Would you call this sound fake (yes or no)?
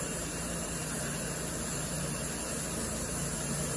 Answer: yes